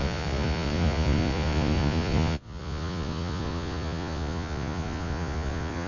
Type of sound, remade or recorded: remade